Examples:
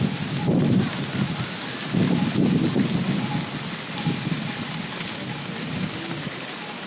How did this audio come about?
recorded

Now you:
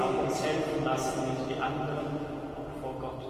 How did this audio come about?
recorded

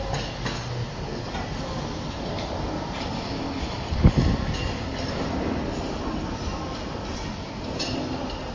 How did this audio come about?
recorded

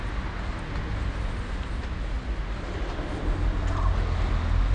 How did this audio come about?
recorded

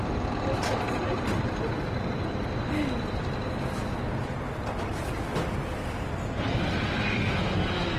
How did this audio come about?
recorded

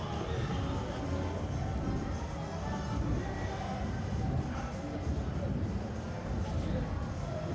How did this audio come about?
recorded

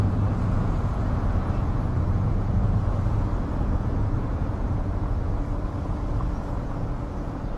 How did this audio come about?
remade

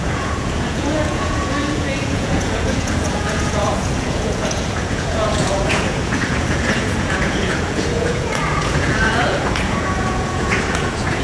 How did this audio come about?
remade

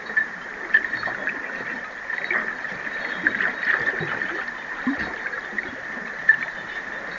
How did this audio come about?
remade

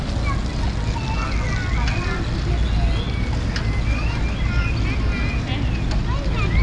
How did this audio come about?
recorded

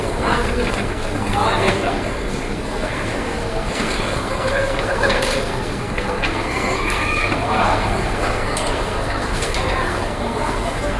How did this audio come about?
remade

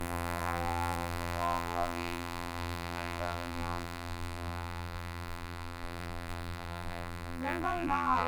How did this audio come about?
remade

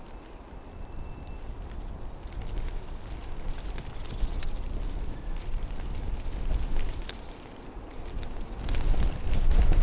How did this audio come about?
recorded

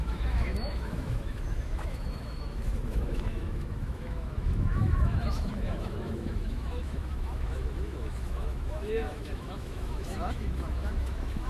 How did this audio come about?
remade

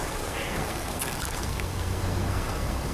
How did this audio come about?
remade